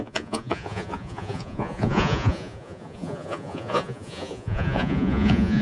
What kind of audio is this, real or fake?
fake